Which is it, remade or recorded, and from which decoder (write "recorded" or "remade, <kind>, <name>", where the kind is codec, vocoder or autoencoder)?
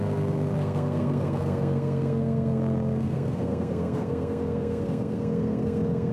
remade, codec, SNAC